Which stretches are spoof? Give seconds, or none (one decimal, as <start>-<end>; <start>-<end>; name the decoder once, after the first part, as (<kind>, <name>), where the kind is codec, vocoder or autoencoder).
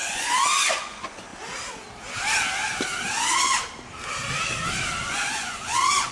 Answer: 0.0-1.3 (vocoder, Vocos); 5.0-6.1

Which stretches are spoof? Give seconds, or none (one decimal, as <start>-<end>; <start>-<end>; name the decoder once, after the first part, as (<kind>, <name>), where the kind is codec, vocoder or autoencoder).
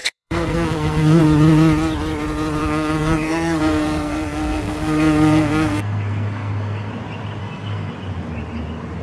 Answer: 0.0-1.2 (codec, SNAC); 2.6-6.9; 7.4-7.9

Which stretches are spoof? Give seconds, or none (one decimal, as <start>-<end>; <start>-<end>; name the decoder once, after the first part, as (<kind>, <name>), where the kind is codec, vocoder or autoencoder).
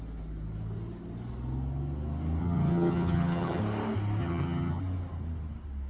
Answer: 2.4-3.6 (vocoder, HiFi-GAN); 4.2-4.8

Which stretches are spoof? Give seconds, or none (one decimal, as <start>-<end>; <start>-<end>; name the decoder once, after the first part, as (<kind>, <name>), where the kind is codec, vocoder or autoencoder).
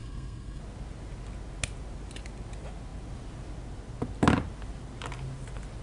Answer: 0.0-0.6 (codec, SNAC)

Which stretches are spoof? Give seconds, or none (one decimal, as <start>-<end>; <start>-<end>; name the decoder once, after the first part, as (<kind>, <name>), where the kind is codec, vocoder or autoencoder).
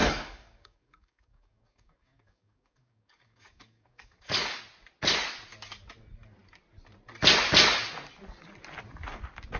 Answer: 0.0-4.6 (codec, DAC)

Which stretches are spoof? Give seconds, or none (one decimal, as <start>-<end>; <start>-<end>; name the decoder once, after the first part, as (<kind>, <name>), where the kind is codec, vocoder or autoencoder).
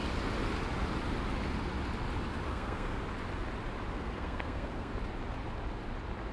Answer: 2.5-3.0 (codec, SNAC); 3.9-4.9